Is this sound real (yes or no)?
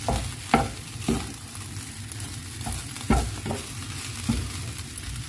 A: yes